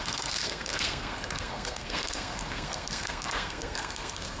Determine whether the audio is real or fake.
fake